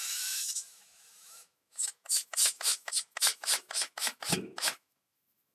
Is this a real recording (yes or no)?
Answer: no